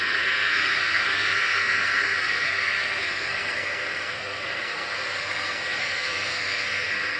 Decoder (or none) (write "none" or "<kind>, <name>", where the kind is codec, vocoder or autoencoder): codec, SNAC